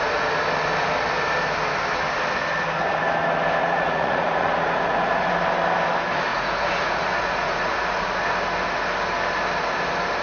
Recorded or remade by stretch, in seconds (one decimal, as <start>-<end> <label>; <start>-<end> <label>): 0.0-3.6 recorded; 3.6-5.3 remade; 5.3-6.3 recorded; 6.3-8.2 remade; 8.2-10.2 recorded